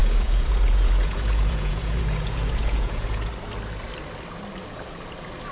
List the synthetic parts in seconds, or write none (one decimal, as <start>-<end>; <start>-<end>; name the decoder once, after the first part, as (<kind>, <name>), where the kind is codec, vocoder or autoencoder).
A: 0.0-3.3 (vocoder, Vocos)